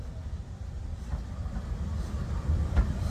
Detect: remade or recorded recorded